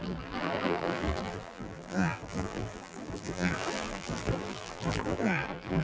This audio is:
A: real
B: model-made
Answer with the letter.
B